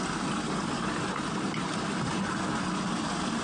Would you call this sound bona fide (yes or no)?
yes